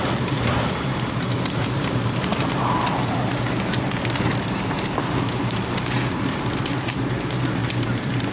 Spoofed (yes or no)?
yes